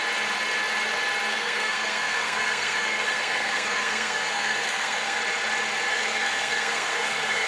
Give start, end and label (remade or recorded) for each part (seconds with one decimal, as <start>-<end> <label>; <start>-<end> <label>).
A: 0.0-1.3 recorded; 1.3-5.2 remade; 5.2-5.9 recorded; 5.9-7.5 remade